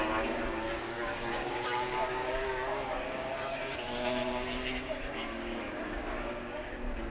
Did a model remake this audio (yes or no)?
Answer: yes